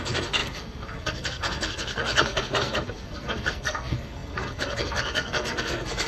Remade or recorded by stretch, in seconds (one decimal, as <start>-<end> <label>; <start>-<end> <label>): 0.0-6.1 remade